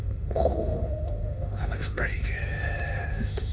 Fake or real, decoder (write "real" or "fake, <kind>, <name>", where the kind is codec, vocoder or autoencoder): fake, autoencoder, DAC-VAE